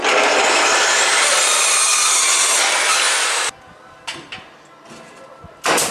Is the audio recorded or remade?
recorded